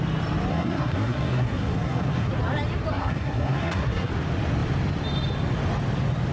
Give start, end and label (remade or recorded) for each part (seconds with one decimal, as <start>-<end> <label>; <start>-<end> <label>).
0.0-0.5 recorded; 0.5-2.3 remade; 2.3-2.9 recorded; 2.9-4.1 remade; 4.1-6.3 recorded